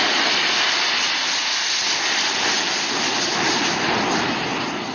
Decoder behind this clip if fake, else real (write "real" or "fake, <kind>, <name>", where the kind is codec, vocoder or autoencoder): real